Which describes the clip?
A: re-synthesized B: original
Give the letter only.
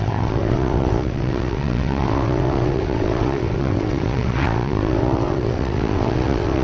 A